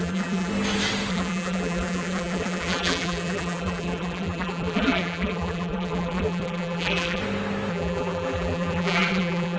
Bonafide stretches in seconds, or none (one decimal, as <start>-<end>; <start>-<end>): 0.5-1.1; 7.2-7.7